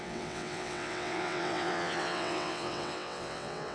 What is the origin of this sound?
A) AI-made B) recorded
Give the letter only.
A